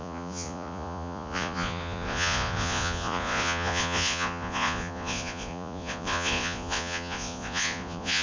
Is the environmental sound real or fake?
fake